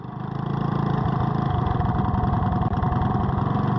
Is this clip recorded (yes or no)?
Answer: yes